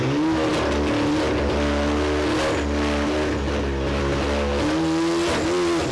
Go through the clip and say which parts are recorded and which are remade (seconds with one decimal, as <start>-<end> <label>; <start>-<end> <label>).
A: 0.0-5.9 recorded